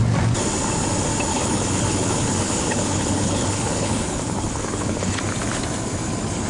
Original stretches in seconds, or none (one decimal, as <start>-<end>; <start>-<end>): 0.0-1.3; 5.2-6.5